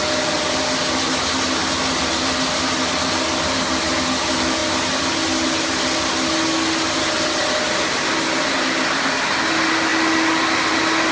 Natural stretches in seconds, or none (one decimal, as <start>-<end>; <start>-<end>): 0.0-11.1